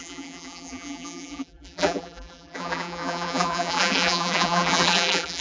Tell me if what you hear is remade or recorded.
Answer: remade